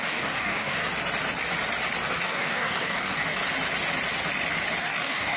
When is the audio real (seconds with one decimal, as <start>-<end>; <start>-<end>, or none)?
0.8-2.1; 3.4-4.8